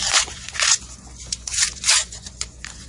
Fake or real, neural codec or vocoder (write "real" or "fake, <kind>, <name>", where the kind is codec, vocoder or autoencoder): fake, vocoder, Vocos